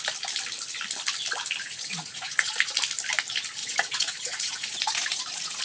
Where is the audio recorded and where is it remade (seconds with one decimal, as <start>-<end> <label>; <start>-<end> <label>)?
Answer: 0.0-1.6 recorded; 1.6-2.7 remade; 2.7-3.6 recorded; 3.6-5.6 remade